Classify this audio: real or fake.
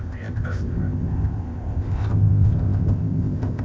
fake